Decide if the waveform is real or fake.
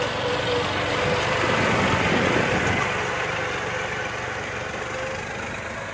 real